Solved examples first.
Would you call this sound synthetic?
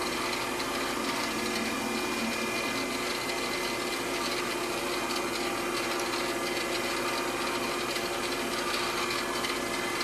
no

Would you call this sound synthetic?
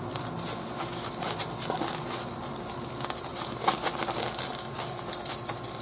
no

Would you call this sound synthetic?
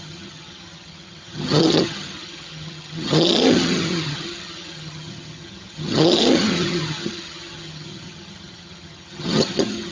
yes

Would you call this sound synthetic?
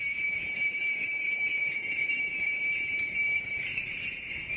yes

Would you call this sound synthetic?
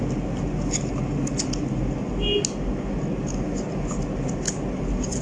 no